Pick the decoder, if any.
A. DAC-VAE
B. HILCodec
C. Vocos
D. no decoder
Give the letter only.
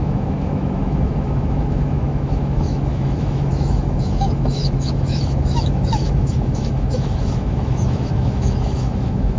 A